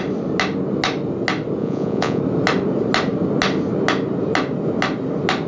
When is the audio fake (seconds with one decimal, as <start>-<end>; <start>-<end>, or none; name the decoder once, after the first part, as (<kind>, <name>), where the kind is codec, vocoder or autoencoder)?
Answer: 1.6-2.2 (vocoder, Vocos)